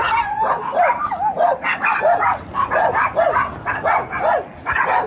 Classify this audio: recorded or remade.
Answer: recorded